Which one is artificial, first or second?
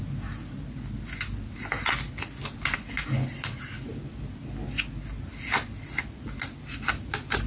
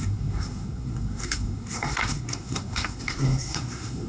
second